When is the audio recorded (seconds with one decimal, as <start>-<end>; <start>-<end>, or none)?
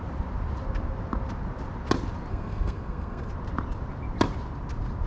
0.0-2.3; 3.3-5.1